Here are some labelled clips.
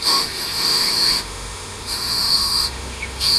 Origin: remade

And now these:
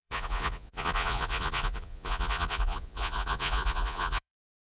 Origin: remade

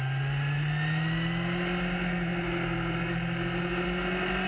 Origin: recorded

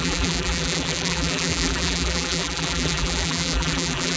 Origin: remade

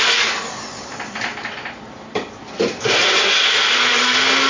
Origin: recorded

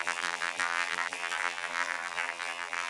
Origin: remade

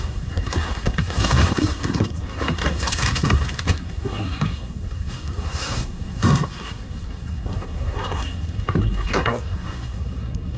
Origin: remade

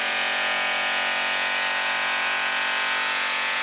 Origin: remade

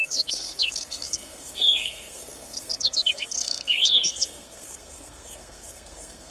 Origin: remade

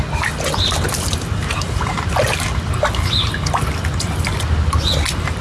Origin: recorded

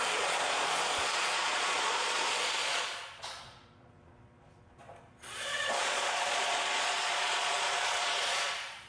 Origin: remade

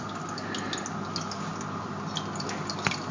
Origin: recorded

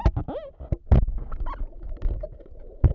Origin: recorded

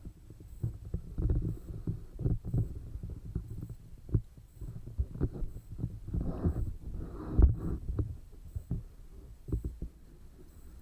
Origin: recorded